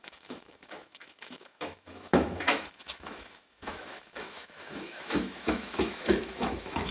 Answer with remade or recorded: remade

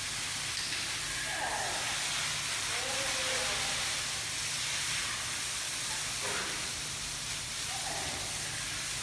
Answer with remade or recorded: recorded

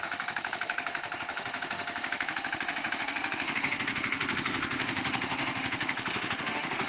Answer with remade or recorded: remade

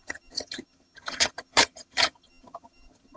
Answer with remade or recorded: remade